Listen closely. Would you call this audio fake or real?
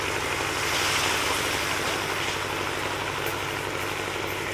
real